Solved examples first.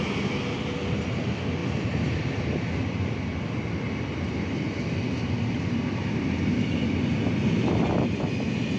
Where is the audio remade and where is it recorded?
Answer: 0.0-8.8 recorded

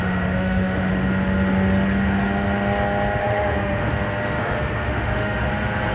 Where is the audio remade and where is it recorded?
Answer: 0.0-0.9 remade; 0.9-3.2 recorded; 3.2-3.9 remade; 3.9-4.4 recorded; 4.4-5.5 remade; 5.5-5.9 recorded

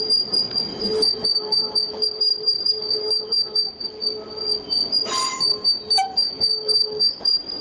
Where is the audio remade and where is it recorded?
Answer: 0.0-0.7 recorded; 0.7-4.0 remade; 4.0-5.2 recorded; 5.2-7.6 remade

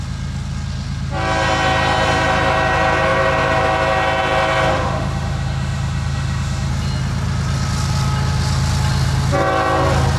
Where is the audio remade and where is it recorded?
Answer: 0.0-4.7 recorded; 4.7-6.7 remade; 6.7-10.2 recorded